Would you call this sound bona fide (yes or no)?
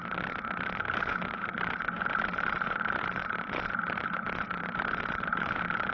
yes